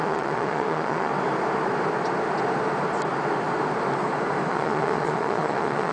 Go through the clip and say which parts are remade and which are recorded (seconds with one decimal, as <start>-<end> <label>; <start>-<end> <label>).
0.0-1.1 remade; 1.1-4.5 recorded; 4.5-5.9 remade